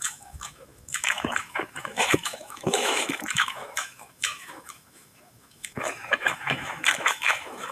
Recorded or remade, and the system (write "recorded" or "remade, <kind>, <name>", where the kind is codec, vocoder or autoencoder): remade, autoencoder, DAC-VAE